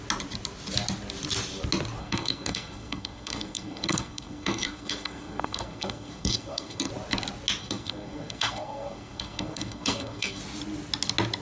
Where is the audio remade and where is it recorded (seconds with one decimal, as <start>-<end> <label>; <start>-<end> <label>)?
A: 0.0-2.0 recorded; 2.0-6.9 remade; 6.9-7.6 recorded; 7.6-10.4 remade; 10.4-11.4 recorded